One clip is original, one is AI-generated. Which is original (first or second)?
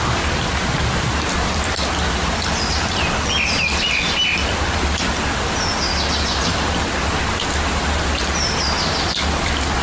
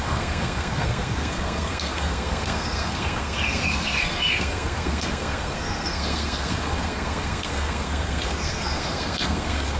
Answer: first